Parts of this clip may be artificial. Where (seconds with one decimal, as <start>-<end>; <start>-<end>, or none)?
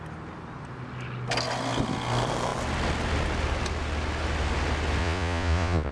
5.0-5.9